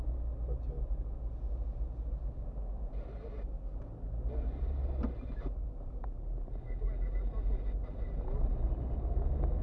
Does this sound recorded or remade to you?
recorded